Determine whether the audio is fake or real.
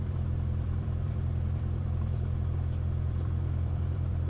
fake